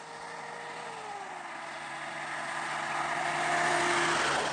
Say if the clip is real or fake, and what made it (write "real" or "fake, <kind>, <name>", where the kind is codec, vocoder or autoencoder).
real